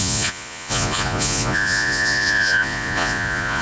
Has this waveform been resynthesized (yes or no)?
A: yes